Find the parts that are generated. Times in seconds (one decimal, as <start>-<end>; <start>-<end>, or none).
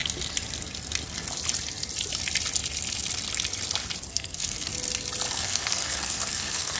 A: 4.1-4.7; 5.3-6.8